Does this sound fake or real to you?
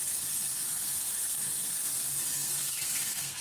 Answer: fake